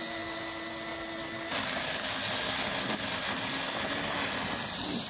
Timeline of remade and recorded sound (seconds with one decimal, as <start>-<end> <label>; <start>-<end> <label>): 0.0-5.1 recorded